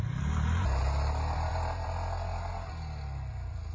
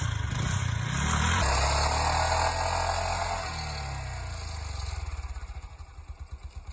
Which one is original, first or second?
second